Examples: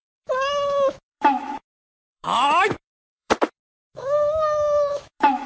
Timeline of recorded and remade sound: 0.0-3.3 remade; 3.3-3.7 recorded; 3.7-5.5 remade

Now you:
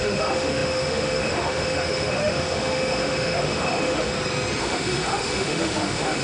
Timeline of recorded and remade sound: 0.0-4.1 remade; 4.1-4.6 recorded; 4.6-6.2 remade

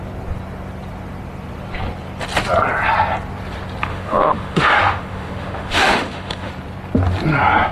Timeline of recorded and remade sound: 0.0-3.9 recorded; 3.9-6.5 remade; 6.5-7.7 recorded